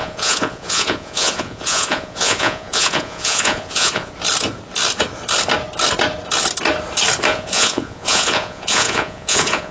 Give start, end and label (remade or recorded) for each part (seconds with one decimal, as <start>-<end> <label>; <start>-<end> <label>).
0.0-4.1 remade; 4.1-7.3 recorded; 7.3-9.7 remade